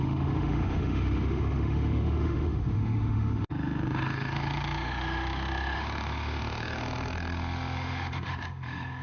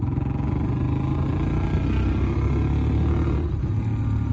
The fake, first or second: first